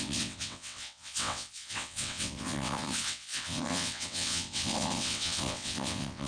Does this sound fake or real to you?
fake